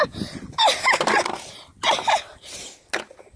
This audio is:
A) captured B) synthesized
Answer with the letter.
A